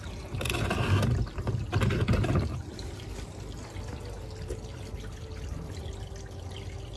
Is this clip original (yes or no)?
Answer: yes